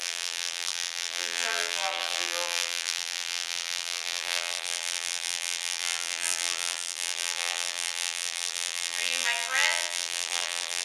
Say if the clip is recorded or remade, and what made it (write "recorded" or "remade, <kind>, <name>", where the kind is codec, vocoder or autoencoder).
remade, vocoder, BigVGAN v2